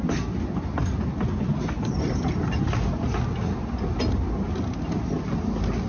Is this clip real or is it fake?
real